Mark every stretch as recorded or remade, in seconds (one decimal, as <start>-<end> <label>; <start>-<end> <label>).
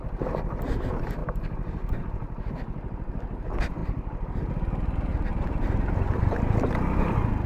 0.0-1.2 recorded; 1.2-2.5 remade; 2.5-5.1 recorded; 5.1-6.7 remade; 6.7-7.5 recorded